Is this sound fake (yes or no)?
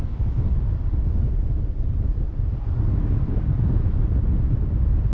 no